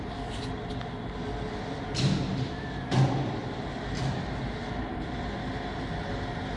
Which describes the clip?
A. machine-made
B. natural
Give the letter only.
B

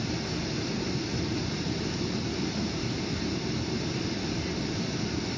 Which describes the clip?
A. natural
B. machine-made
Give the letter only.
B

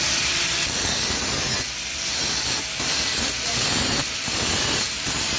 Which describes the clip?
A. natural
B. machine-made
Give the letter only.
B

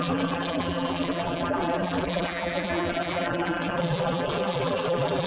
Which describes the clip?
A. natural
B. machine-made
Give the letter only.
B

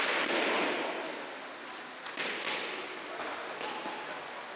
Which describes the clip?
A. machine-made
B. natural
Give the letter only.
B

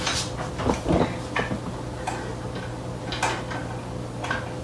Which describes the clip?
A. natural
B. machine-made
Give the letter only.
A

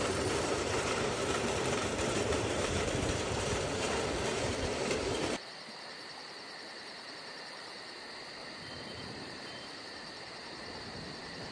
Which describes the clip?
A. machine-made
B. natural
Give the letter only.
A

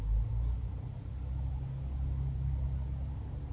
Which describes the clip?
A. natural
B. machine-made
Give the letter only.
A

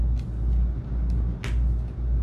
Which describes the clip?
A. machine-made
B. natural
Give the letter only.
B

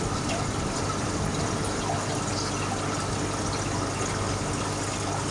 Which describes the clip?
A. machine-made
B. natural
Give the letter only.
B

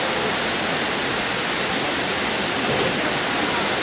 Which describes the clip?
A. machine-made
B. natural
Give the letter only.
B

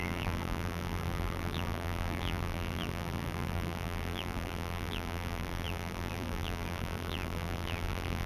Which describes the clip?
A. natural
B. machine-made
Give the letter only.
B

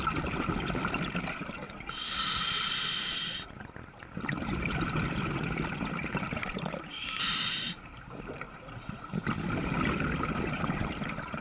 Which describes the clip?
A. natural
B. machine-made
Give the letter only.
B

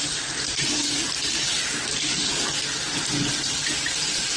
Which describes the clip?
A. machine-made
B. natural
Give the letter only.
A